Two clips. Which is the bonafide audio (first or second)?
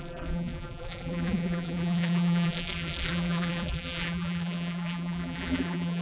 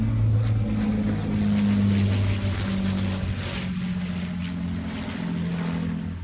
second